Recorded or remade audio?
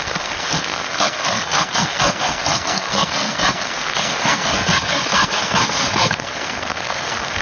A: remade